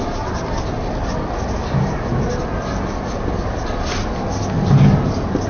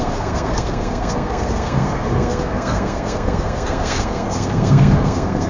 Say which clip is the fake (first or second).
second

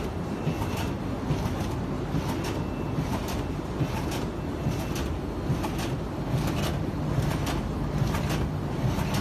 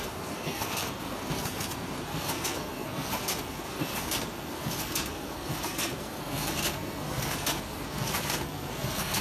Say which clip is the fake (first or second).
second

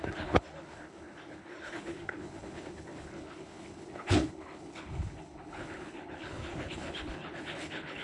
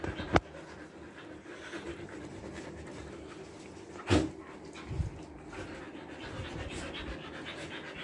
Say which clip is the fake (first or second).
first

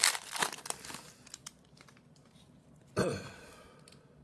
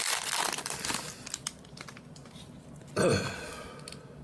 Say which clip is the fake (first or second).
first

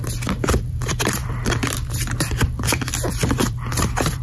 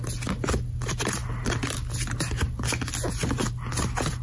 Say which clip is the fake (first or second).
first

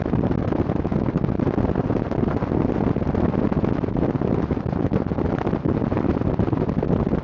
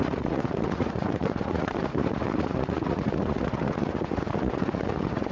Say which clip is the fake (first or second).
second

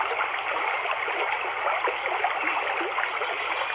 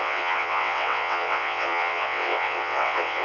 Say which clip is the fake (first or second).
second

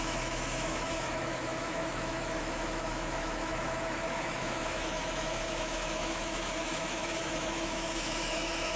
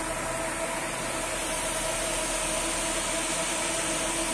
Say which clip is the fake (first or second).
first